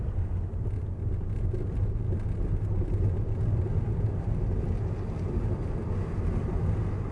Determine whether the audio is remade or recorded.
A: recorded